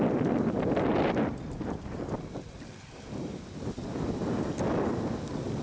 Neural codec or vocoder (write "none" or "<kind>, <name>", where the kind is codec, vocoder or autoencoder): none